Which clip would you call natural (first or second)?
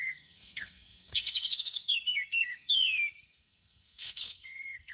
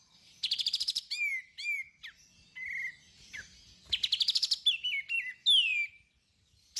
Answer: second